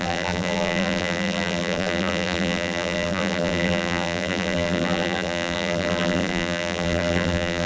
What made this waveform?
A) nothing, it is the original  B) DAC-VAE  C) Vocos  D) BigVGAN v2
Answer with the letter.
D